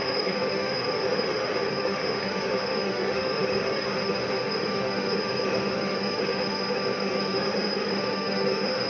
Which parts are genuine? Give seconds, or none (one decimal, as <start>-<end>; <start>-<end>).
none